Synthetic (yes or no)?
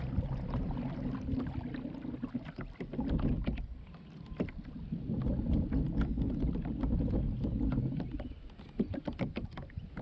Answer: no